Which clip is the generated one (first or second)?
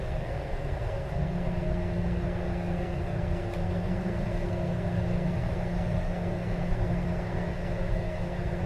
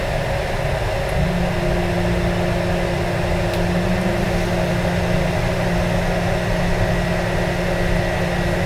first